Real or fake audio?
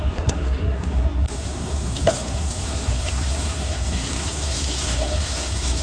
fake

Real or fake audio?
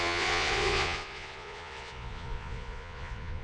fake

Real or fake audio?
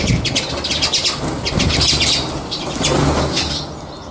real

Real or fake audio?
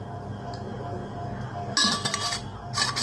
real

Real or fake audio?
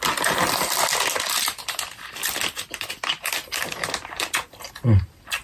real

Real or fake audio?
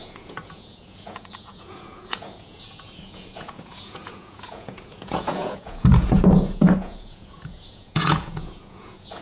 fake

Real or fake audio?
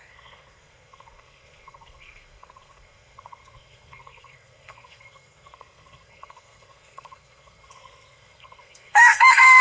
fake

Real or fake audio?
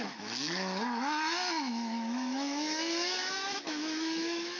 fake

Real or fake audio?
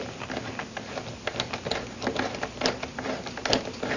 real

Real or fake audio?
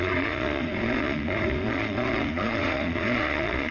fake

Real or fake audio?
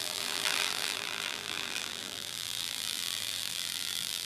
fake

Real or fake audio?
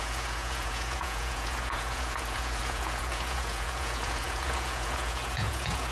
fake